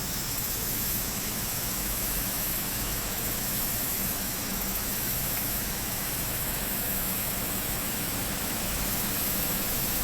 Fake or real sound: fake